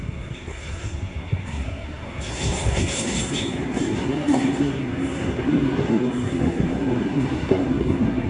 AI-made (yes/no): yes